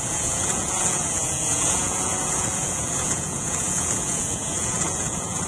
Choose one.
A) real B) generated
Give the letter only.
B